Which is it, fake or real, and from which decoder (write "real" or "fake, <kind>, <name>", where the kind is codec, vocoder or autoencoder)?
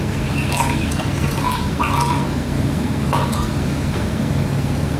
fake, codec, SNAC